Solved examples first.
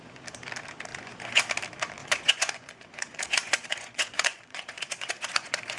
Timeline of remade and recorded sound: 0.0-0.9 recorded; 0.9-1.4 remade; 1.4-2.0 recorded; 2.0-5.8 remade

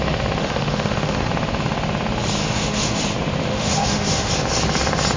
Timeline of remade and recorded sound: 0.0-0.4 recorded; 0.4-1.3 remade; 1.3-2.4 recorded; 2.4-3.0 remade; 3.0-3.5 recorded; 3.5-4.3 remade; 4.3-5.2 recorded

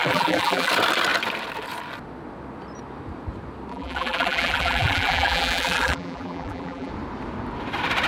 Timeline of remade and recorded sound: 0.0-0.7 remade; 0.7-3.7 recorded; 3.7-6.9 remade; 6.9-8.1 recorded

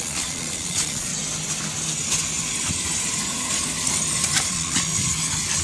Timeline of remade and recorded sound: 0.0-1.1 remade; 1.1-4.5 recorded; 4.5-4.9 remade; 4.9-5.6 recorded

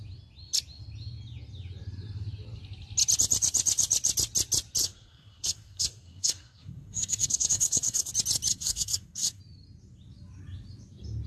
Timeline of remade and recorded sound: 0.0-4.8 recorded; 4.8-8.1 remade; 8.1-8.5 recorded; 8.5-9.4 remade; 9.4-11.3 recorded

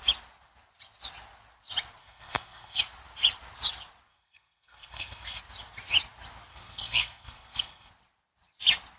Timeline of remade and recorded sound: 0.0-2.0 recorded; 2.0-2.8 remade; 2.8-4.1 recorded; 4.1-5.4 remade; 5.4-6.5 recorded; 6.5-7.9 remade; 7.9-9.0 recorded